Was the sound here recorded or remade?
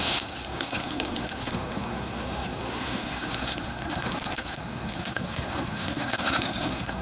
remade